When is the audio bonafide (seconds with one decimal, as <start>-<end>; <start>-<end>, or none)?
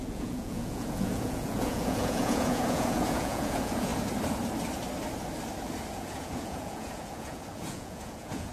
3.9-5.9